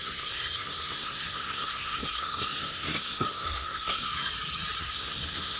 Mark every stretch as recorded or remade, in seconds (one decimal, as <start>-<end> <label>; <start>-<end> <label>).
0.0-4.3 remade; 4.3-4.8 recorded; 4.8-5.6 remade